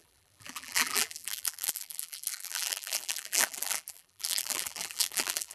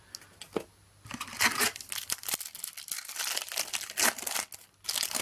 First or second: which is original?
second